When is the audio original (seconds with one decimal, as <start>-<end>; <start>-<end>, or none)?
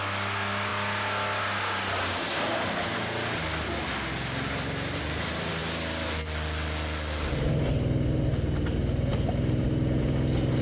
0.0-10.6